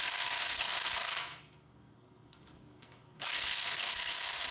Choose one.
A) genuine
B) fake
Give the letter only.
B